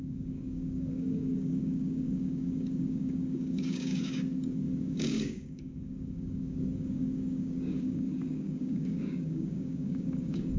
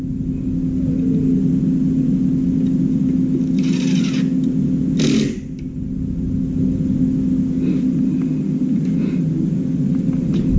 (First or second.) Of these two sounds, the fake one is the first